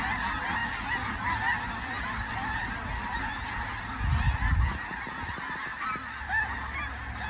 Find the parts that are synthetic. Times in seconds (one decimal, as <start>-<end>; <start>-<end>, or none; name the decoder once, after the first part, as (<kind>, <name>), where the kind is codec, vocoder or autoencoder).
none